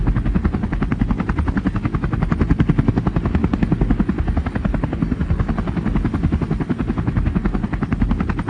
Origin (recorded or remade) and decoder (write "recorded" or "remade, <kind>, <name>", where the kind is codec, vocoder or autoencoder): recorded